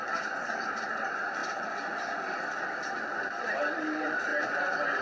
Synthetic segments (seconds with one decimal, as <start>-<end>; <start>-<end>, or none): 0.0-5.0